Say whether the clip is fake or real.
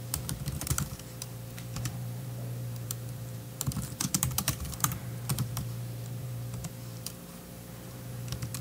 fake